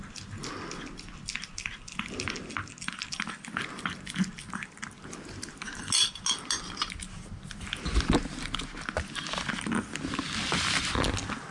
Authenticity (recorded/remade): recorded